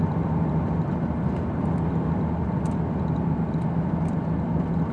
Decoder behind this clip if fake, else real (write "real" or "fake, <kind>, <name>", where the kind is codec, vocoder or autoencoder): real